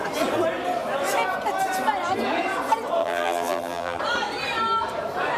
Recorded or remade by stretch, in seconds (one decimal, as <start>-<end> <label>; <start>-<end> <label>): 0.0-3.0 recorded; 3.0-4.0 remade; 4.0-5.4 recorded

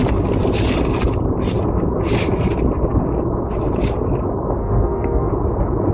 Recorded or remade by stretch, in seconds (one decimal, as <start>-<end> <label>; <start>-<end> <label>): 0.0-4.6 recorded; 4.6-5.3 remade; 5.3-5.9 recorded

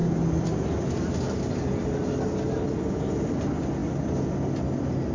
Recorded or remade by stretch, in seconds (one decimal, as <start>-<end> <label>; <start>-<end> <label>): 0.0-5.1 recorded

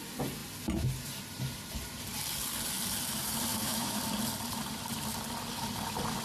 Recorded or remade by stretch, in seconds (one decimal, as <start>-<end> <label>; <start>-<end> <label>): 0.0-3.5 recorded; 3.5-4.0 remade; 4.0-6.2 recorded